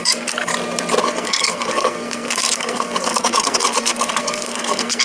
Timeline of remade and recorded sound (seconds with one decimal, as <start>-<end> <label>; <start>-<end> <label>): 0.0-0.5 remade; 0.5-1.0 recorded; 1.0-5.0 remade